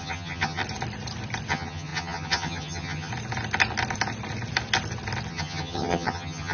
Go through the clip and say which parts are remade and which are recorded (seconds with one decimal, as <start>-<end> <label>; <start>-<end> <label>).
0.0-0.6 remade; 0.6-1.5 recorded; 1.5-3.1 remade; 3.1-5.3 recorded; 5.3-6.5 remade